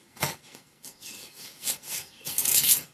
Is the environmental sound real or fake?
fake